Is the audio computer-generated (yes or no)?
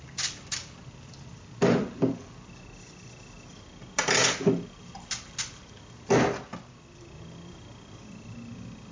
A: no